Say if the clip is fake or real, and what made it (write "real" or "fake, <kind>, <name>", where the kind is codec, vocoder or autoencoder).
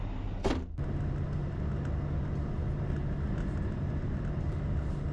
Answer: real